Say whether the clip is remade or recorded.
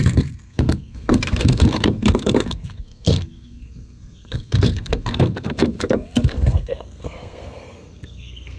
remade